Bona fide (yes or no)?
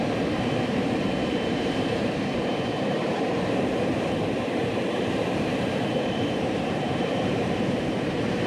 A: no